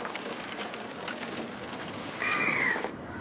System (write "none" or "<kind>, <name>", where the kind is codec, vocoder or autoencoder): codec, DAC